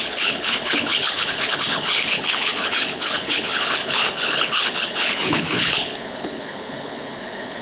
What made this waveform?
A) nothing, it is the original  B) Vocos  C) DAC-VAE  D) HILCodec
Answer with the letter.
D